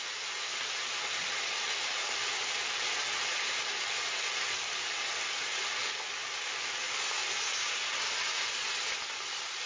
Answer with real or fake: real